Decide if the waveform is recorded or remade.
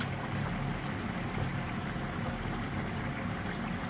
recorded